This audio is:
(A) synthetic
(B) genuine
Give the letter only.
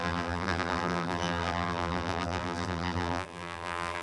A